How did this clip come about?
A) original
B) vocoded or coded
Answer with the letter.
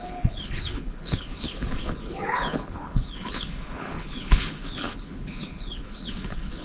B